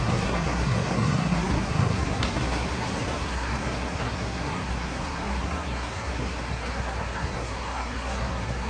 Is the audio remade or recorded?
remade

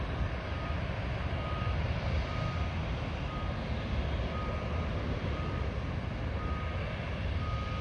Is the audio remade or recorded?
recorded